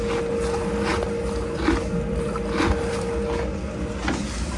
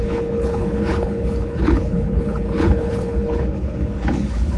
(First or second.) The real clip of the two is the first